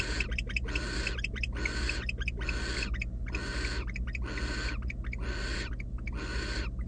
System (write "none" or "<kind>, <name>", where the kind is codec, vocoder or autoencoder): none